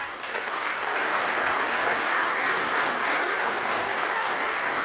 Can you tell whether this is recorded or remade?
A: remade